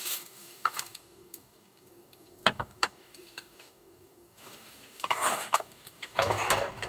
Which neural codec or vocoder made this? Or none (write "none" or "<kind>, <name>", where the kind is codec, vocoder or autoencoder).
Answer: codec, DAC